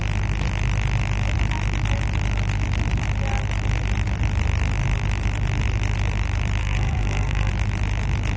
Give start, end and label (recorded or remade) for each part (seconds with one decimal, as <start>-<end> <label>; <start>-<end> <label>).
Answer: 0.0-6.6 recorded; 6.6-7.5 remade; 7.5-8.4 recorded